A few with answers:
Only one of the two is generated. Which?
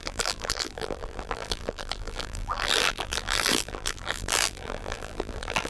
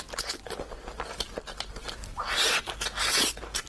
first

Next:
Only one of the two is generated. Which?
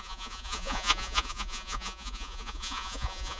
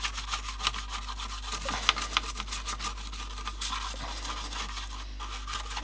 first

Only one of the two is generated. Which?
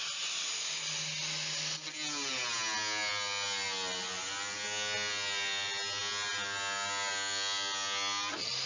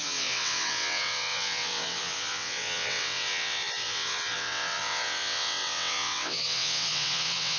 second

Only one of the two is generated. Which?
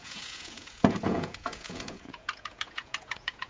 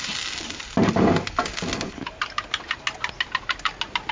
first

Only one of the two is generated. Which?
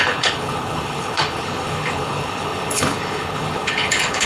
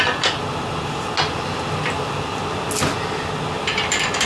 first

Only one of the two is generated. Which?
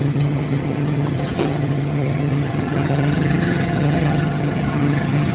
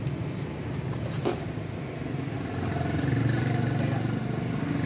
first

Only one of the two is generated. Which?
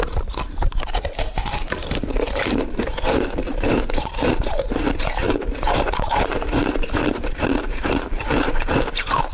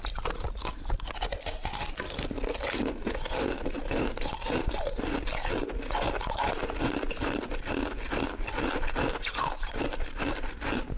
first